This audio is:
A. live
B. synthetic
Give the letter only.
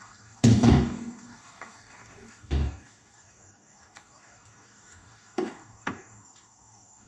B